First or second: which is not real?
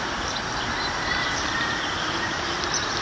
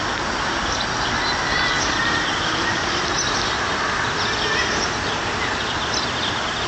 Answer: first